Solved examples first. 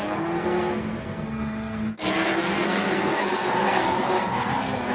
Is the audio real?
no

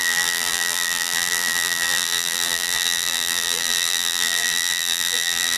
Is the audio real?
no